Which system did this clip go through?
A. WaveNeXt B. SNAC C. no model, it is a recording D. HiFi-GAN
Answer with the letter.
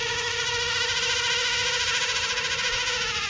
C